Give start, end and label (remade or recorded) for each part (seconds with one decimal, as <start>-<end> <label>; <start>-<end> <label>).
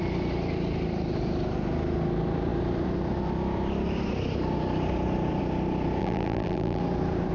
0.0-6.0 recorded; 6.0-6.8 remade; 6.8-7.3 recorded